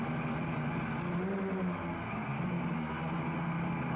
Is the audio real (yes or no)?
yes